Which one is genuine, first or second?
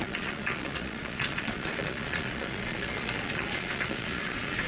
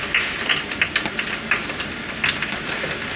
second